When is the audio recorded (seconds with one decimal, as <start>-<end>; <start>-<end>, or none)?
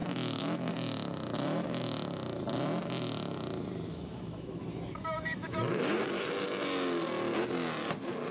0.7-3.9; 5.9-8.3